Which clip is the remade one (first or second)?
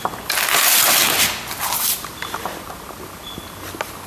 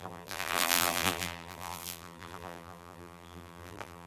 second